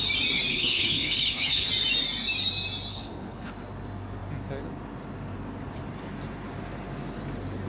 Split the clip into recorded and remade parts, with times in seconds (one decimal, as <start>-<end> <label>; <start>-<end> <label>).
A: 0.0-0.5 recorded; 0.5-1.7 remade; 1.7-2.9 recorded; 2.9-3.5 remade; 3.5-7.7 recorded